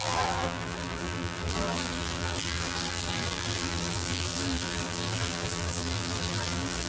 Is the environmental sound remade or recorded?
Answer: remade